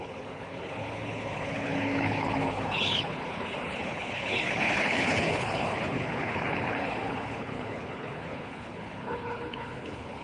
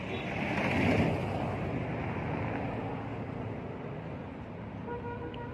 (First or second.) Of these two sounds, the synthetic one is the first